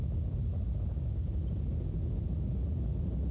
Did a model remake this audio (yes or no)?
no